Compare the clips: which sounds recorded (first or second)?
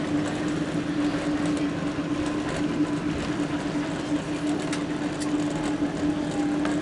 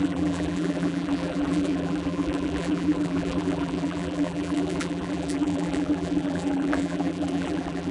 first